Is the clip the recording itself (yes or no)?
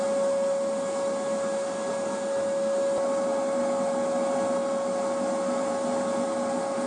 yes